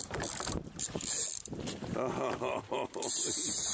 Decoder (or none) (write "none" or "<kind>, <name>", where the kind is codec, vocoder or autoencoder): vocoder, BigVGAN v2